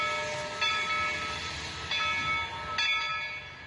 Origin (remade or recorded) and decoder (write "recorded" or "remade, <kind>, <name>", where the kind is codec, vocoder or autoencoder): recorded